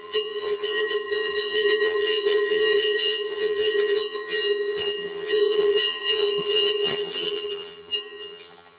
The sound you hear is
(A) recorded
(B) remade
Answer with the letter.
B